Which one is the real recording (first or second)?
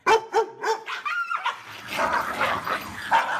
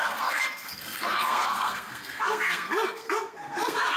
first